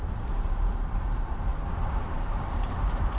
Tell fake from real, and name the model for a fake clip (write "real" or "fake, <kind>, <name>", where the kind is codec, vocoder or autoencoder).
fake, vocoder, BigVGAN v2